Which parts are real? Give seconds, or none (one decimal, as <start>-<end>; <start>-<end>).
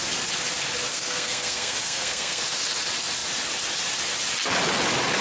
0.0-0.9; 2.4-5.2